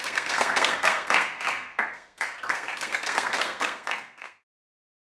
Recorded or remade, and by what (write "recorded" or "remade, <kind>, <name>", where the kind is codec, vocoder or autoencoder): remade, codec, SNAC